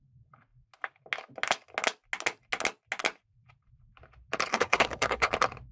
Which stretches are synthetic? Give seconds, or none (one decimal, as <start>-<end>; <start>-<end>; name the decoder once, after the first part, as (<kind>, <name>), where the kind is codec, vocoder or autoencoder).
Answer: 4.5-5.3 (codec, SNAC)